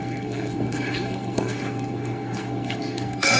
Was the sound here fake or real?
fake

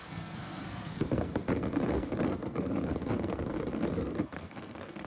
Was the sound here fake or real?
fake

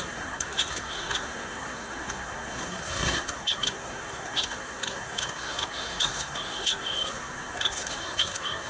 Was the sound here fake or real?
fake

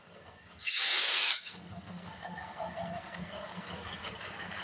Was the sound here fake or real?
fake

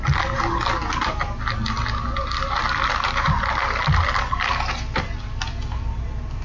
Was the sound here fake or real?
real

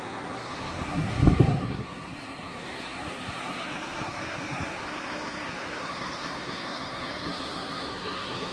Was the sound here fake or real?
fake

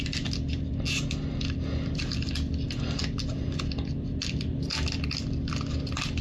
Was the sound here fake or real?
real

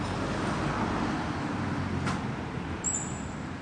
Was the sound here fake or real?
real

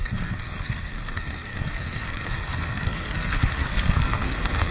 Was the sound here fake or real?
fake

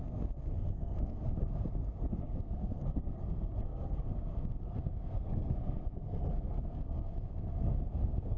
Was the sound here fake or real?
fake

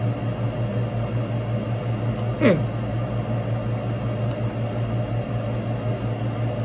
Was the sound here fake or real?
real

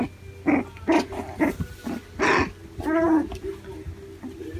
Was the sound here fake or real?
real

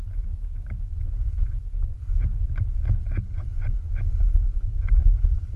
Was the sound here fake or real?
real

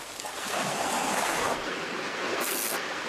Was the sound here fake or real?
fake